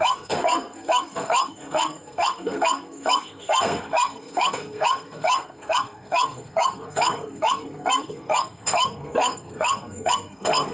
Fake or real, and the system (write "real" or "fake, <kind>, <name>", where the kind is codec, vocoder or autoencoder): fake, codec, SNAC